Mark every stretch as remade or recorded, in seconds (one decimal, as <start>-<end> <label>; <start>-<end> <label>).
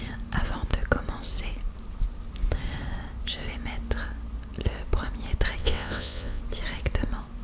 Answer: 0.0-5.6 recorded; 5.6-6.4 remade; 6.4-7.4 recorded